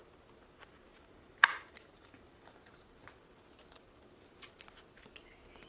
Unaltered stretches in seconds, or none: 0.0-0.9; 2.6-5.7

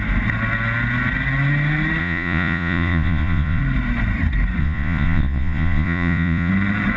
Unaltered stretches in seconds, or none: 0.0-2.0; 3.6-4.6; 6.5-7.0